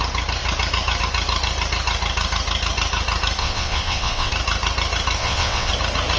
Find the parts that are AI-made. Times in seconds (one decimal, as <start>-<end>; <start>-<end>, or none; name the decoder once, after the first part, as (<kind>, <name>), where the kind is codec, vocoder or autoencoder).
3.4-4.3 (vocoder, WaveNeXt); 5.2-5.7